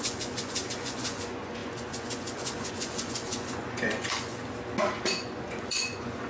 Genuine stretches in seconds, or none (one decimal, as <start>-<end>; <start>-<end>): 4.4-5.0